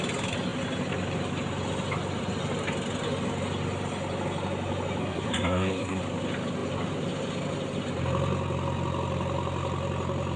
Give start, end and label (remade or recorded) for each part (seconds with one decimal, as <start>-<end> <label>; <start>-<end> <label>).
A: 0.0-5.0 recorded; 5.0-6.0 remade; 6.0-10.4 recorded